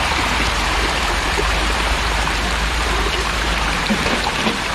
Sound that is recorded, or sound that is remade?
remade